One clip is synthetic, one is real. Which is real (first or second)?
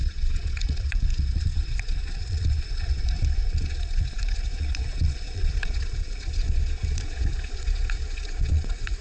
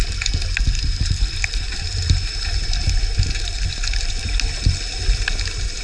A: second